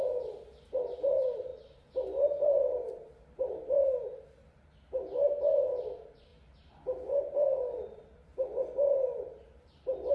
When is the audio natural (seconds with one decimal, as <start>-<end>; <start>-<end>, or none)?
0.0-10.1